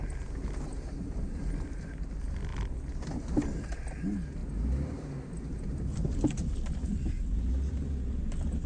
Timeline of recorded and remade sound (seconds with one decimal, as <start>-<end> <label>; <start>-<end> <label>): 0.0-8.7 recorded